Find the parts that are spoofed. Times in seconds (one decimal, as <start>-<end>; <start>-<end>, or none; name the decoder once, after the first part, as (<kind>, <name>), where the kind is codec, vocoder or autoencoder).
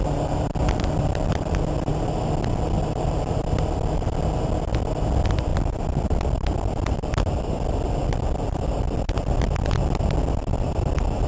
none